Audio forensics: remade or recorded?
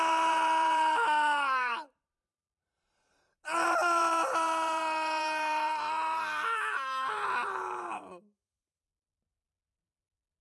remade